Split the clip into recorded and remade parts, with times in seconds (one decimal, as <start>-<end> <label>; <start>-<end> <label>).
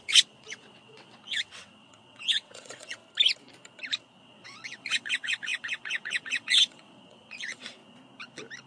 0.0-3.0 remade; 3.0-4.2 recorded; 4.2-7.8 remade; 7.8-8.7 recorded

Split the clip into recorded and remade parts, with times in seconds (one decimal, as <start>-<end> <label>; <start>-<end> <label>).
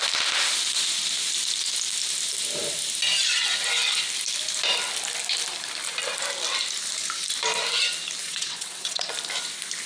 0.0-8.2 recorded; 8.2-9.1 remade; 9.1-9.9 recorded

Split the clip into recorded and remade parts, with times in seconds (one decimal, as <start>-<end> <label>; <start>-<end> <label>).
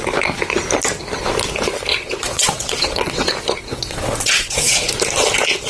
0.0-1.9 recorded; 1.9-3.3 remade; 3.3-3.7 recorded; 3.7-4.9 remade; 4.9-5.7 recorded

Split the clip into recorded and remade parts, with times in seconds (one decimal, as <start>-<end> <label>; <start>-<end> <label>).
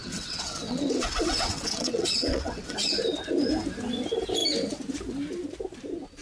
0.0-2.9 remade; 2.9-6.2 recorded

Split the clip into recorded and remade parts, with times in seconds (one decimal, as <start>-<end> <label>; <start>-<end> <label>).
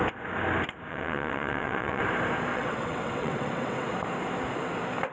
0.0-0.9 recorded; 0.9-2.0 remade; 2.0-2.5 recorded; 2.5-3.9 remade; 3.9-5.1 recorded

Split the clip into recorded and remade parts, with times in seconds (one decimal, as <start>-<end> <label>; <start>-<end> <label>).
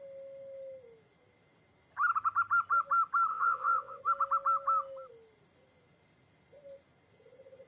0.0-3.3 recorded; 3.3-4.0 remade; 4.0-7.7 recorded